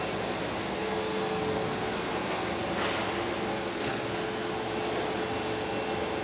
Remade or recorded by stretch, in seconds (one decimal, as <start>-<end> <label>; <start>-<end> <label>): 0.0-0.6 recorded; 0.6-2.5 remade; 2.5-3.5 recorded; 3.5-4.5 remade; 4.5-6.2 recorded